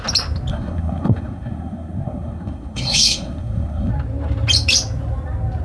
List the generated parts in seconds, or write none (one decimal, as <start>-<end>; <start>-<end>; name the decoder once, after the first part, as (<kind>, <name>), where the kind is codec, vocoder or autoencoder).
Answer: 0.5-3.9 (codec, SNAC)